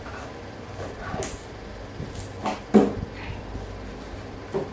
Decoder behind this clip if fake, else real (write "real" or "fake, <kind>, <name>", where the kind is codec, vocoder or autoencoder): real